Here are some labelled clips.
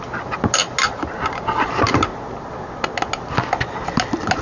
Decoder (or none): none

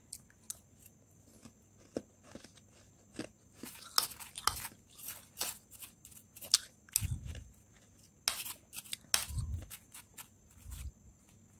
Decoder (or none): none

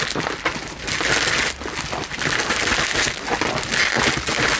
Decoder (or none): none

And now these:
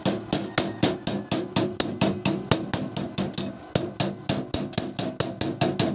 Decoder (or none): none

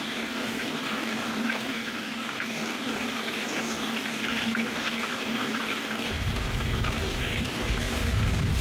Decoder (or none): codec, DAC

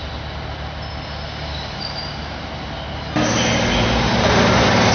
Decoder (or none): none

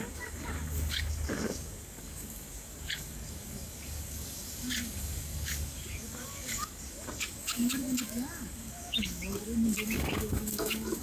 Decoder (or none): codec, DAC